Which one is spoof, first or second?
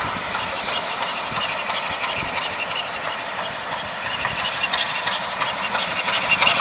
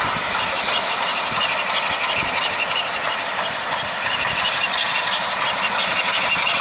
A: first